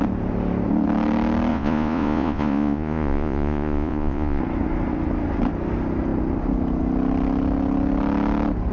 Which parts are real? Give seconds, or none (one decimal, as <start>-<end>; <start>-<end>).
0.0-1.5; 4.4-8.7